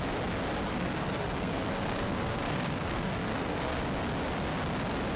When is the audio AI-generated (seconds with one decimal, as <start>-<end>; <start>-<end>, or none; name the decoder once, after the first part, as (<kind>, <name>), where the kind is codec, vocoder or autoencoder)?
0.7-3.8 (codec, SNAC)